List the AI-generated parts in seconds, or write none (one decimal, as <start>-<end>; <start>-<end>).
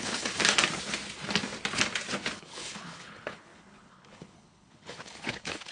0.0-0.4; 2.3-5.7